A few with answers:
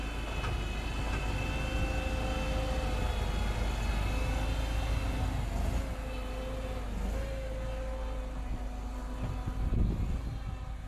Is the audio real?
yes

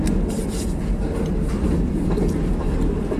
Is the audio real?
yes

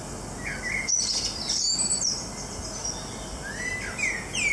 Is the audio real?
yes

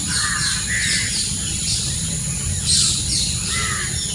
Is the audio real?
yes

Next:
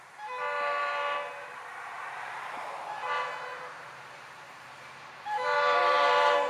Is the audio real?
no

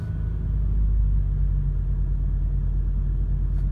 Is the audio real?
yes